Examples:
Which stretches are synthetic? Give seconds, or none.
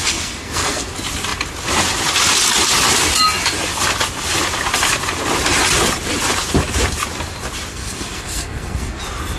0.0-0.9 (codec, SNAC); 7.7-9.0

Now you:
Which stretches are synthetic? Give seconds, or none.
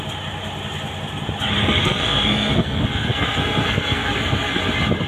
1.6-4.6 (codec, SNAC)